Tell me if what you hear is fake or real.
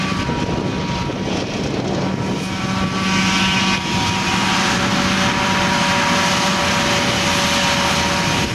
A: real